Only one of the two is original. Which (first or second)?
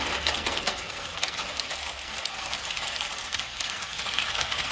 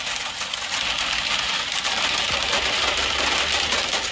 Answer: second